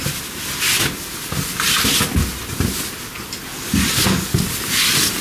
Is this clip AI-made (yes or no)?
no